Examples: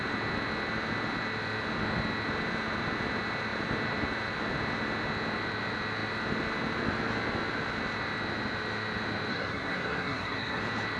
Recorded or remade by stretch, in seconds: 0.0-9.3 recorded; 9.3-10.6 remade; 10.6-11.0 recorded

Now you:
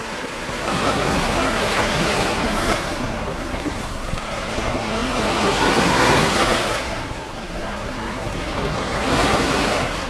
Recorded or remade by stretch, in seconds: 0.0-10.1 remade

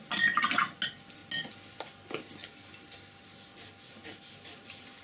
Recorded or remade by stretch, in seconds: 0.0-5.0 recorded

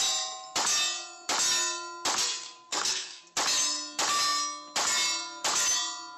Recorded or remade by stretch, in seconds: 0.0-2.7 recorded; 2.7-3.2 remade; 3.2-6.2 recorded

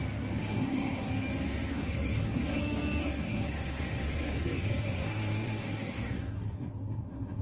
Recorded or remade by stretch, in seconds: 0.0-0.4 recorded; 0.4-1.1 remade; 1.1-1.7 recorded; 1.7-2.6 remade; 2.6-3.0 recorded; 3.0-7.4 remade

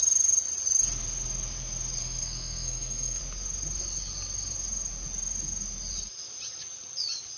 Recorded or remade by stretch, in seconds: 0.0-2.0 recorded; 2.0-3.2 remade; 3.2-7.4 recorded

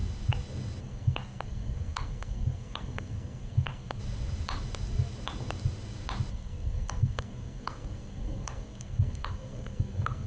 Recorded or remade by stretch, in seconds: 0.0-0.8 recorded; 0.8-4.0 remade; 4.0-6.3 recorded; 6.3-10.3 remade

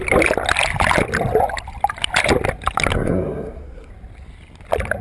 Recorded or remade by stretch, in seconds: 0.0-2.9 recorded; 2.9-3.9 remade; 3.9-5.0 recorded